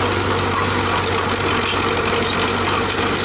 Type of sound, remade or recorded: recorded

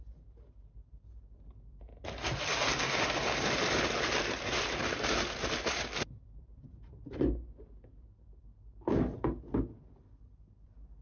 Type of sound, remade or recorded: recorded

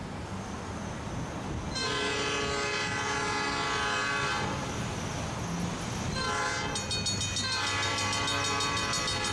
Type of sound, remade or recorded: recorded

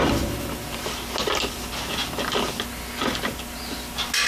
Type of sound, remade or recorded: recorded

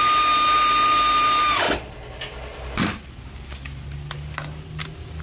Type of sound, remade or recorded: recorded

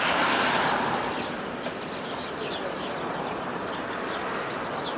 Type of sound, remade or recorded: recorded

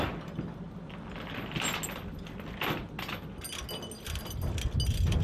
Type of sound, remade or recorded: recorded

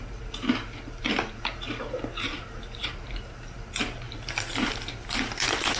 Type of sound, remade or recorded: remade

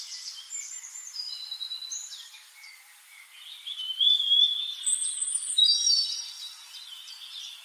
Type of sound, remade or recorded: remade